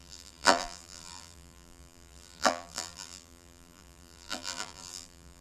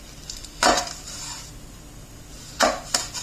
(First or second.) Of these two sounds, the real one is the second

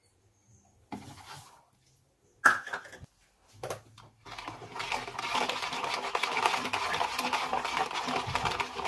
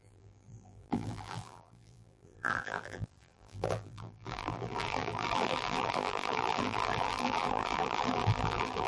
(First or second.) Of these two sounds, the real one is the first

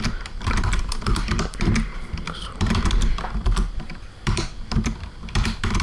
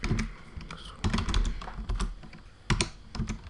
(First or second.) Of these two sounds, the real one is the second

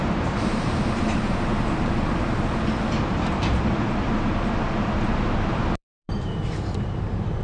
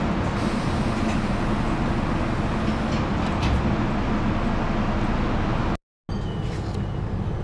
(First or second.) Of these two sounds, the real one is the second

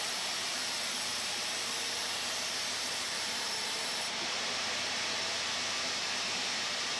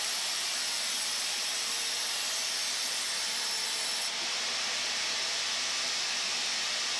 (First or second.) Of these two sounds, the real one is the second